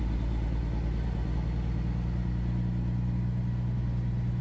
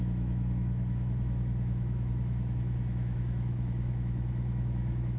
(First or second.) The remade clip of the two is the second